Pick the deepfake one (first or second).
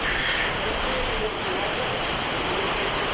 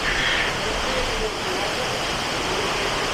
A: first